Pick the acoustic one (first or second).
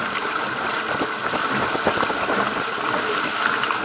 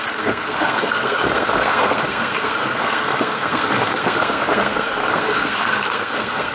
first